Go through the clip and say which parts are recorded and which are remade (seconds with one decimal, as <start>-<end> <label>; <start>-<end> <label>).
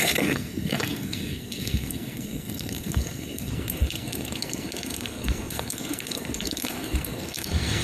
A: 0.0-7.8 remade